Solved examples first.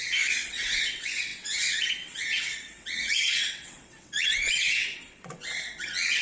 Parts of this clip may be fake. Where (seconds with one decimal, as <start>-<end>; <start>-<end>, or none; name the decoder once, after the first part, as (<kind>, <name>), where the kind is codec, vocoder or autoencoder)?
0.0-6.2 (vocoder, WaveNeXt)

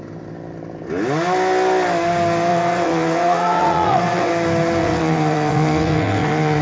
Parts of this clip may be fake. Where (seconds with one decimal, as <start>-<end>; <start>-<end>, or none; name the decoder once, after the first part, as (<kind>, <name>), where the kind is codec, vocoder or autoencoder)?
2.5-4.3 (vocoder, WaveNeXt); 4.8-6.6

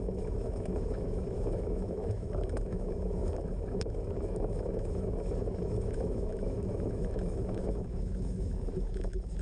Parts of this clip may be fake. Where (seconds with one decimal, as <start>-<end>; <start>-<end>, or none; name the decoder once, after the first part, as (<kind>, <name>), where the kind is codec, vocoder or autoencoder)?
0.0-9.4 (autoencoder, DAC-VAE)

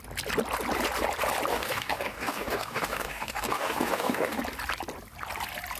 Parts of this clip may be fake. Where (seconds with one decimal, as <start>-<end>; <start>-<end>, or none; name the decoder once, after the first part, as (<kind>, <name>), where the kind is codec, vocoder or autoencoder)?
1.5-4.4 (codec, DAC)

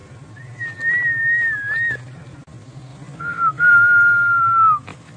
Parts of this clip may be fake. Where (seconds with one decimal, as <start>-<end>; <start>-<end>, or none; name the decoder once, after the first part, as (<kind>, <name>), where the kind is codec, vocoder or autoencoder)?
none

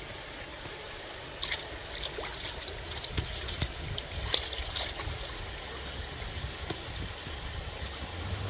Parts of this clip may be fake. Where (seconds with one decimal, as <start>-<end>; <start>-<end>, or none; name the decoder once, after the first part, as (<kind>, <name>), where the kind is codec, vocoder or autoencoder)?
0.5-1.1 (vocoder, BigVGAN v2)

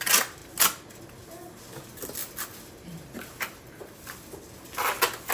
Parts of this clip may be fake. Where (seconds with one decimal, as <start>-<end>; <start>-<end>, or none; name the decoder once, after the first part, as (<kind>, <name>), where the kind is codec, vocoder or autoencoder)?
2.2-4.3 (vocoder, BigVGAN v2)

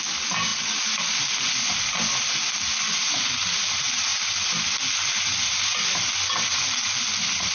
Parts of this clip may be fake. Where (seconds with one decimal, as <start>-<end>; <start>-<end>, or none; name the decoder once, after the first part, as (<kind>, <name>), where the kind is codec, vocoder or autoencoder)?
none